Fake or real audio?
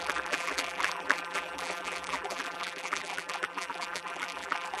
fake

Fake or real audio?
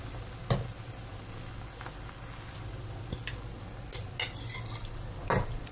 real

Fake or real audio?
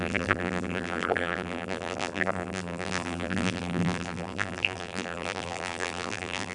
fake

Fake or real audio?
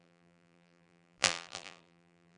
fake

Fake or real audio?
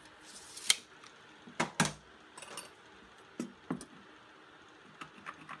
real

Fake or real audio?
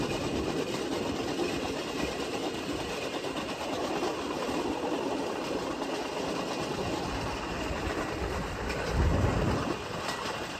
real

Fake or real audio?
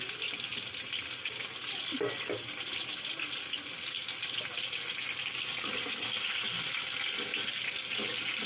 real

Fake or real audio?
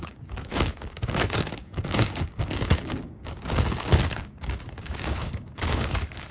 fake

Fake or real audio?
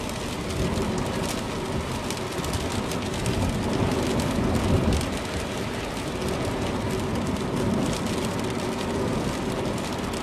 real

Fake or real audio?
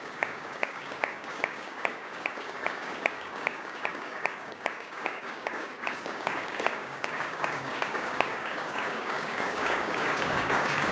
fake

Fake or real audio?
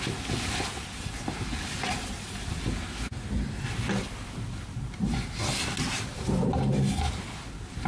real